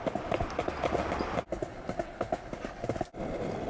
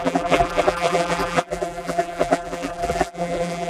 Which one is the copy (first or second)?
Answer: second